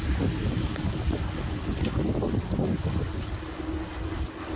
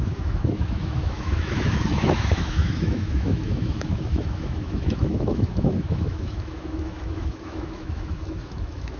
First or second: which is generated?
second